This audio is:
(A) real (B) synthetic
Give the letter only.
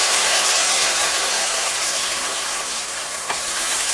B